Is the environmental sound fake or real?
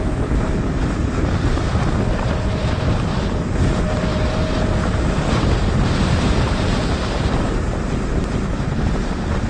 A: fake